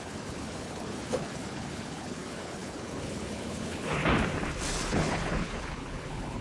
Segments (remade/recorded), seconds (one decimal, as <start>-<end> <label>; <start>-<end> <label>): 0.0-4.0 remade; 4.0-4.7 recorded; 4.7-6.4 remade